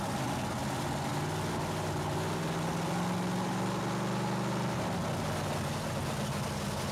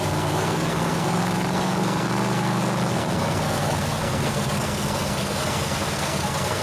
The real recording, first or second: first